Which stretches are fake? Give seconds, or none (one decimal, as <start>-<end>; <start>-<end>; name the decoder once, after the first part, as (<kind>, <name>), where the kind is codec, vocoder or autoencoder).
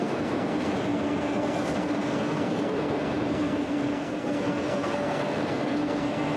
0.0-6.4 (codec, SNAC)